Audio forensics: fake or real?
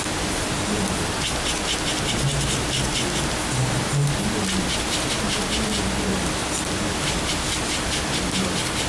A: real